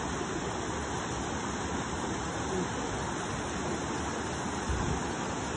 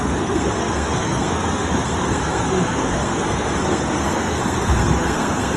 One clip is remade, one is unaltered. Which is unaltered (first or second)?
first